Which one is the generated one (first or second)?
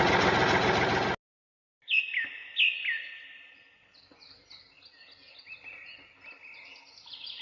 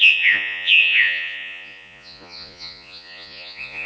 second